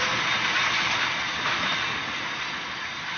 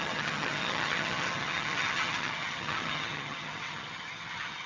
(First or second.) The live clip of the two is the first